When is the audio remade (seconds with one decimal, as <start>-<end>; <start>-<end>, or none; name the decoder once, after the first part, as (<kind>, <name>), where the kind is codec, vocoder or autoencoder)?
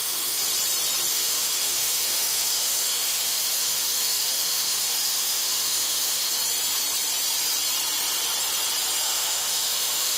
0.0-0.4 (autoencoder, DAC-VAE); 1.1-6.4; 9.0-10.2